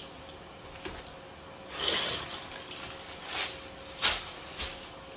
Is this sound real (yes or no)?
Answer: yes